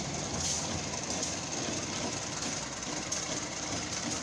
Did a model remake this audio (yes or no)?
no